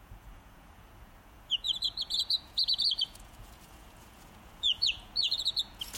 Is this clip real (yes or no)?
no